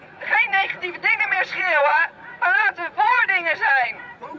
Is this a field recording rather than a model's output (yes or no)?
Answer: no